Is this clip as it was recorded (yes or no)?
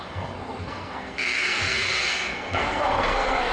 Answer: no